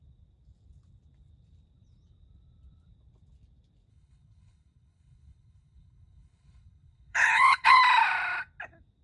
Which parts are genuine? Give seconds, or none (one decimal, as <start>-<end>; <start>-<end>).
0.0-3.9; 7.8-9.0